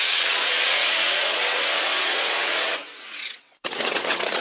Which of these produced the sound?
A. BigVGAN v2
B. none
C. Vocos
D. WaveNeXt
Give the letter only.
D